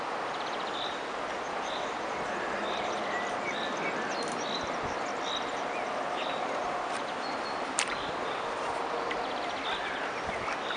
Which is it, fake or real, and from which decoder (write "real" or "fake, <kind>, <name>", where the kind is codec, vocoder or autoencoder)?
real